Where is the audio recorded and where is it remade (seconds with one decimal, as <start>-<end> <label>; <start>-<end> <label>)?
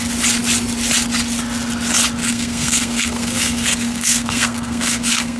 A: 0.0-2.2 recorded; 2.2-5.4 remade